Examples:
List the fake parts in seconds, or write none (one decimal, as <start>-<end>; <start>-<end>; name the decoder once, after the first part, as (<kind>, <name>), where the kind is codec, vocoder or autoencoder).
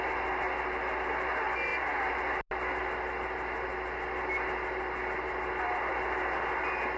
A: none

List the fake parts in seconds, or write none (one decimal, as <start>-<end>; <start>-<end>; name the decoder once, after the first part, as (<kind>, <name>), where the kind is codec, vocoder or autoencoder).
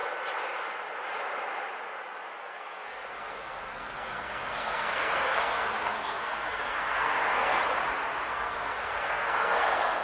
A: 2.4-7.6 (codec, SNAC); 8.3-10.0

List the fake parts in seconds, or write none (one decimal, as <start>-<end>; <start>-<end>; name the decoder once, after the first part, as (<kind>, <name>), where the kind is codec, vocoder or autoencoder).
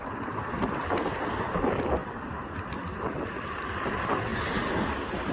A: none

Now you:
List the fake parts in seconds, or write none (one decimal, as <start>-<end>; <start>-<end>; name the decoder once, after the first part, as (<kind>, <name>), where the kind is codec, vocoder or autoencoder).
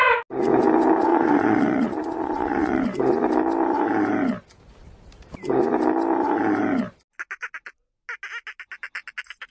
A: 1.1-2.8 (vocoder, Vocos)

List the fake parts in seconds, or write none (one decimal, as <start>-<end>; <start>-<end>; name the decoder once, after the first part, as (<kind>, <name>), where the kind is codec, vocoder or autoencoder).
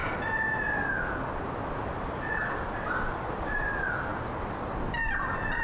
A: none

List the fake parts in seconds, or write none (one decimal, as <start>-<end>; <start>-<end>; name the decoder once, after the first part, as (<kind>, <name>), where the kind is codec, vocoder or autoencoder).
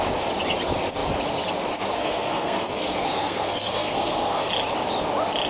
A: 2.0-4.5 (codec, SNAC)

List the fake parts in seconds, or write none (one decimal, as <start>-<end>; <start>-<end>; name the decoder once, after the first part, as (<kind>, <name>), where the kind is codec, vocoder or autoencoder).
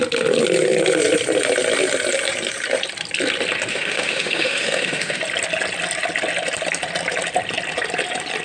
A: 3.7-5.2 (autoencoder, DAC-VAE)